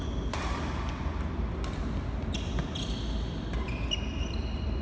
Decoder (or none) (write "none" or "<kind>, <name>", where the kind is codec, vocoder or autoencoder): none